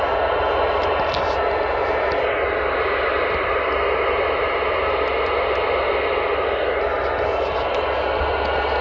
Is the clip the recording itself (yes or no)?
yes